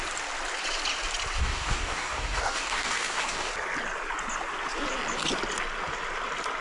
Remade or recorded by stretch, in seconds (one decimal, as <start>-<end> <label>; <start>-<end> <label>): 0.0-1.4 recorded; 1.4-3.5 remade; 3.5-6.6 recorded